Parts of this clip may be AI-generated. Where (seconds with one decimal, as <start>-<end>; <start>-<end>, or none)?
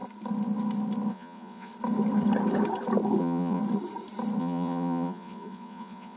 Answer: 1.1-1.7; 3.2-3.6; 4.4-6.2